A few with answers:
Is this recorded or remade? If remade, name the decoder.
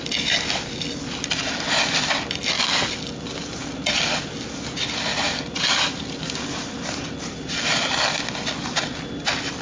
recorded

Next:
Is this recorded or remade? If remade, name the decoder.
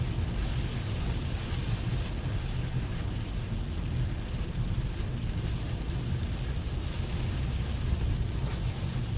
recorded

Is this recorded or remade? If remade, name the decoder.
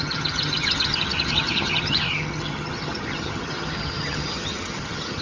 remade, vocoder, HiFi-GAN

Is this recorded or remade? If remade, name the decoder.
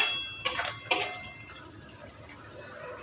recorded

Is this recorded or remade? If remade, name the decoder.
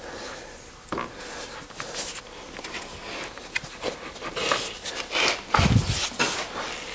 recorded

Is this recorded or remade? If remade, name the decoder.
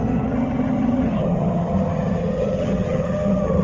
remade, vocoder, HiFi-GAN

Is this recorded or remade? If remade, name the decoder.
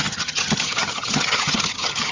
remade, vocoder, HiFi-GAN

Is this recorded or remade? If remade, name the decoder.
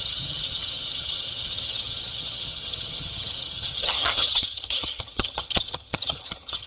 remade, vocoder, HiFi-GAN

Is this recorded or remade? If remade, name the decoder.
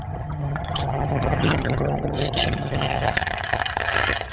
remade, vocoder, HiFi-GAN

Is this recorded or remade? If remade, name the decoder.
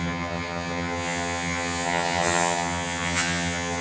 remade, vocoder, HiFi-GAN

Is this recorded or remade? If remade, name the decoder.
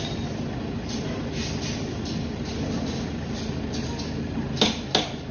recorded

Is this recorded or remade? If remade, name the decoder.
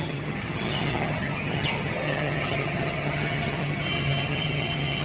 remade, vocoder, HiFi-GAN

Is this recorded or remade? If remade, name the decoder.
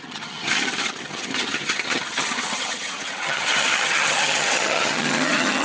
remade, vocoder, HiFi-GAN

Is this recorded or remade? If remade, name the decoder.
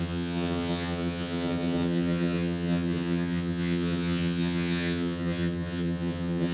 remade, vocoder, HiFi-GAN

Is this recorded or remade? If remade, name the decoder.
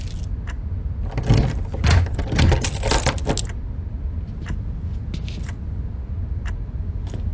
recorded